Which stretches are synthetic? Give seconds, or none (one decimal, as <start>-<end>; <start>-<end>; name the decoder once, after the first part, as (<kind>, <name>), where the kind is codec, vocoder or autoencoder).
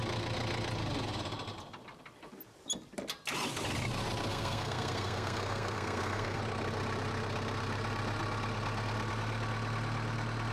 4.3-6.4 (codec, SNAC)